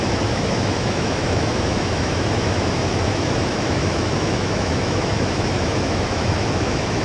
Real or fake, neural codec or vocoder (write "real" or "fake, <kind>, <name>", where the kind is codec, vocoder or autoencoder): fake, autoencoder, DAC-VAE